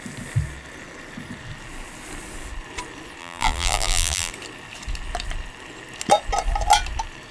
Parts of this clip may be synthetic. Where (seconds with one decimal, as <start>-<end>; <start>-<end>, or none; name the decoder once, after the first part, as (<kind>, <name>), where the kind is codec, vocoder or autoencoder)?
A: 3.2-4.3 (vocoder, BigVGAN v2)